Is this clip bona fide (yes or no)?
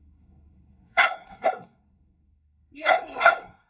no